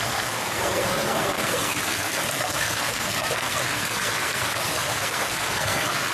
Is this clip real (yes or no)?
no